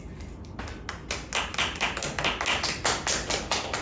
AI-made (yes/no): no